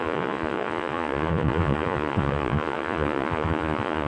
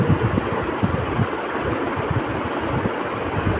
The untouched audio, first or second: second